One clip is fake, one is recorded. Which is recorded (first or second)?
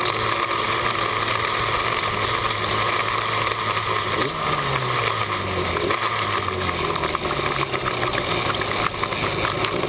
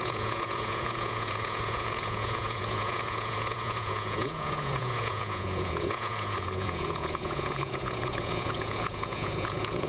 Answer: first